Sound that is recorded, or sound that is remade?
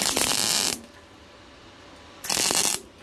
recorded